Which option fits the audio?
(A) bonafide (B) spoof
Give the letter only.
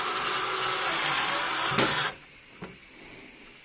A